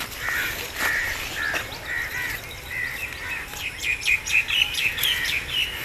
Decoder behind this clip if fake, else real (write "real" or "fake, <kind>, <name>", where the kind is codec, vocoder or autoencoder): fake, vocoder, BigVGAN v2